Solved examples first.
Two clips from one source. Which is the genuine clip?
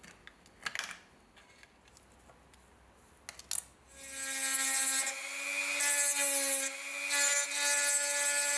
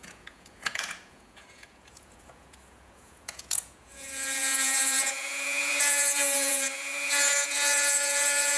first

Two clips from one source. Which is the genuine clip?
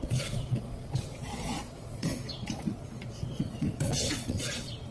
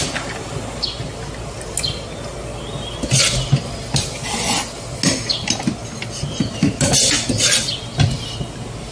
second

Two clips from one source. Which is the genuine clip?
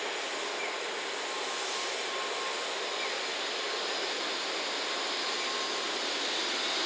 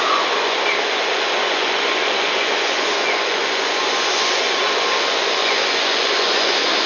first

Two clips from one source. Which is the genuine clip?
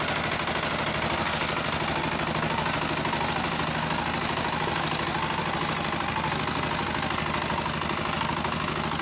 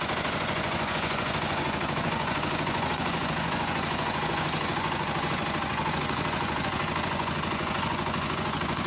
first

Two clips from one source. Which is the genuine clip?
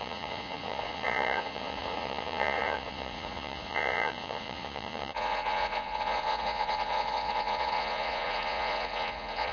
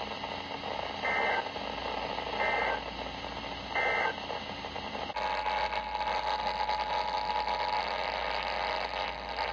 second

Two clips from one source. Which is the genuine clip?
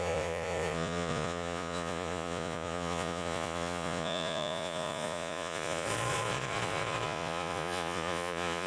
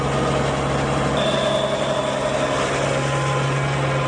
second